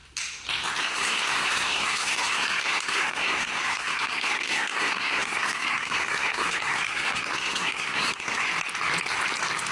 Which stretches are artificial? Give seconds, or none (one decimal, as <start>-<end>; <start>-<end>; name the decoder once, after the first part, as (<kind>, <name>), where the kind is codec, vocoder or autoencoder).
0.8-8.5 (codec, SNAC)